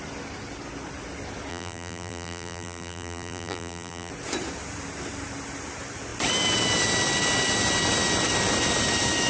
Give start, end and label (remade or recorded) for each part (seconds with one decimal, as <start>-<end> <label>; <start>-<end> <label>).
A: 0.0-1.5 recorded; 1.5-4.1 remade; 4.1-9.3 recorded